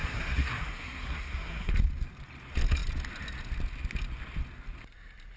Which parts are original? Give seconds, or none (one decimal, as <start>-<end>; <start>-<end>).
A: 1.7-5.4